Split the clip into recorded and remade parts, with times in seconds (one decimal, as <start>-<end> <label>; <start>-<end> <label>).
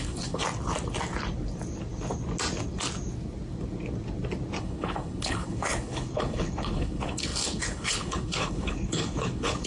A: 0.0-0.4 remade; 0.4-4.6 recorded; 4.6-9.7 remade